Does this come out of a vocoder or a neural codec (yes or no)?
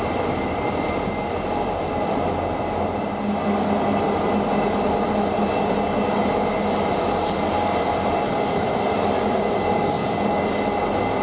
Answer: no